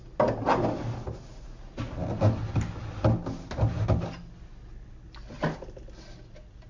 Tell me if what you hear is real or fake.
real